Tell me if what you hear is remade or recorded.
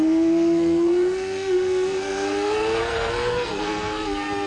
remade